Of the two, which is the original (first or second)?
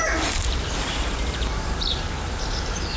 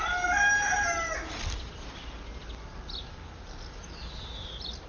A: second